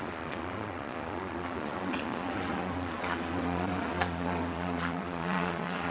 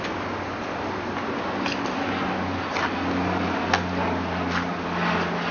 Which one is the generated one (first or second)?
first